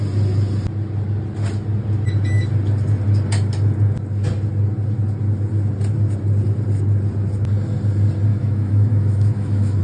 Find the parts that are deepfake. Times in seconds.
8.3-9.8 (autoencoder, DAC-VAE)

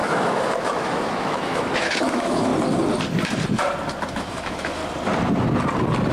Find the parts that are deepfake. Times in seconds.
0.0-2.5 (autoencoder, DAC-VAE); 4.1-4.8